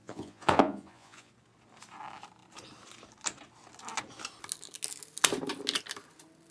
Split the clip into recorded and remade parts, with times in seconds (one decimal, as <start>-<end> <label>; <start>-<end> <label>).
0.0-1.3 remade; 1.3-6.5 recorded